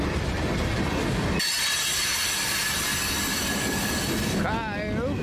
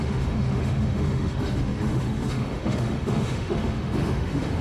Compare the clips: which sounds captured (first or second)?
first